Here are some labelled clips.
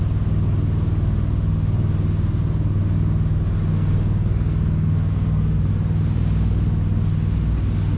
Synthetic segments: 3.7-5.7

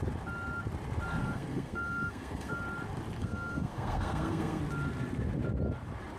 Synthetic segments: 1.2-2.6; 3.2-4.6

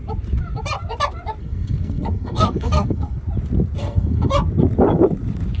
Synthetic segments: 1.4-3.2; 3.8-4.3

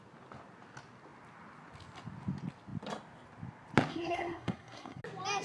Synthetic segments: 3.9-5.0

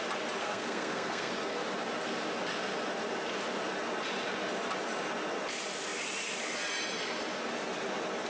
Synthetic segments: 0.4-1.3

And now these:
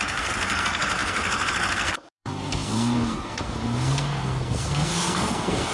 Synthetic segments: 0.0-5.7

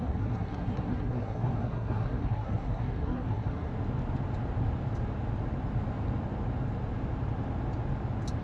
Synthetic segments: 0.0-3.7

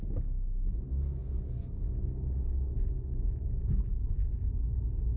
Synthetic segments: none